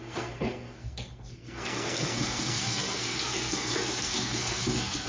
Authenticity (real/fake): fake